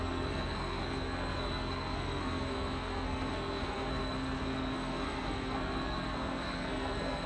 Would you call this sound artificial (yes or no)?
yes